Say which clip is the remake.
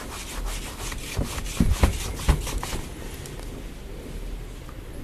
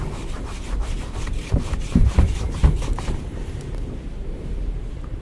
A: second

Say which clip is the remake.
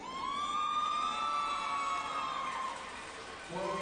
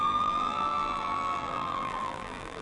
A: second